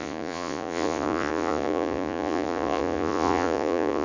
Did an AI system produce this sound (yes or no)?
yes